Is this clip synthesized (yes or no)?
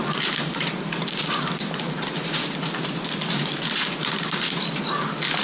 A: no